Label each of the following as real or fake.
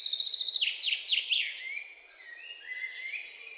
real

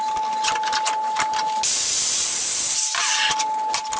real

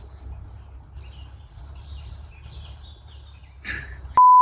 real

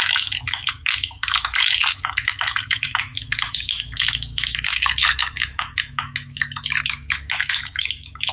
fake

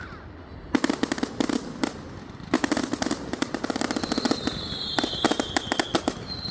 real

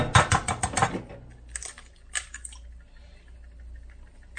real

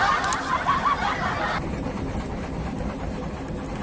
real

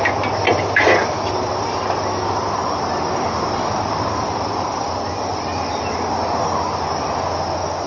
real